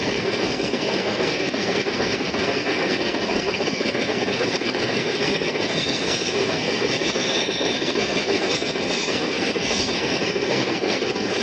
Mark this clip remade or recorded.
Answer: remade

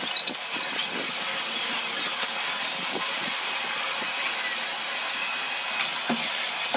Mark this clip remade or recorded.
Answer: recorded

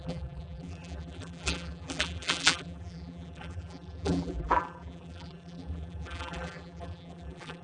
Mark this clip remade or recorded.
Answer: remade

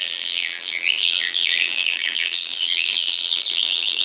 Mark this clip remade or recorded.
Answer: remade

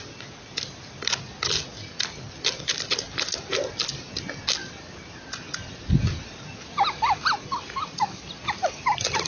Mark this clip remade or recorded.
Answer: recorded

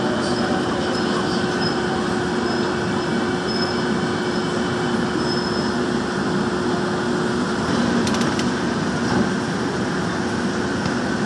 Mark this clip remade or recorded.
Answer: recorded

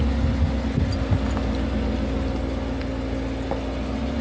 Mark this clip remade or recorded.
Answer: recorded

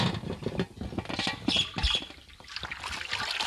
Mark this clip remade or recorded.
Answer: recorded